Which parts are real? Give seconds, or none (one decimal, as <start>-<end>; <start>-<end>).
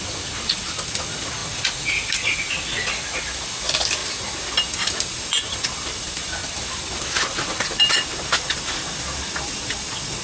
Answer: 0.0-10.2